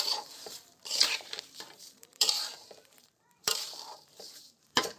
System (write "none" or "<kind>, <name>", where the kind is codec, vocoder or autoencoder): vocoder, BigVGAN v2